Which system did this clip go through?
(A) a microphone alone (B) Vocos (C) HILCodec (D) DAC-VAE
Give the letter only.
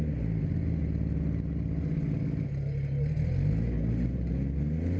A